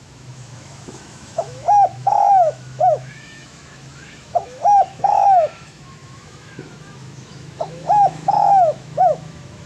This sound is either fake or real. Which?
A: fake